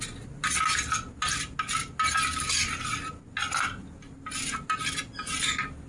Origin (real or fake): real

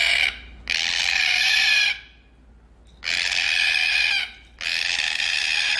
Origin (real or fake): real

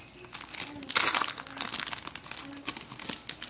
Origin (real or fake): real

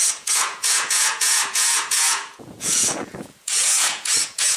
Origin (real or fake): fake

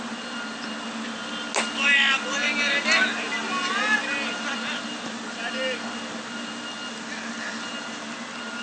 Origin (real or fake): real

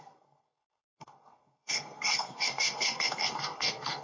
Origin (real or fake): fake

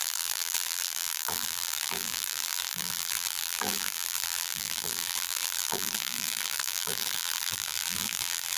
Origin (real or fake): fake